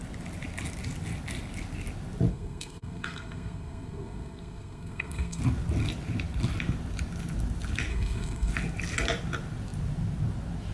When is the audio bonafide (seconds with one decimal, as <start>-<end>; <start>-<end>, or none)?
0.0-2.3; 5.4-7.9; 8.5-10.7